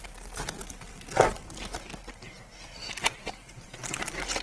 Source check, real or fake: real